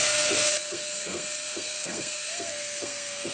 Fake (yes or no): yes